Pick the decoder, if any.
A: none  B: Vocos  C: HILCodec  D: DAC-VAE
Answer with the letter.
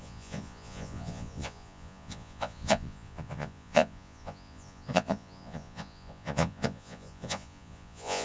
B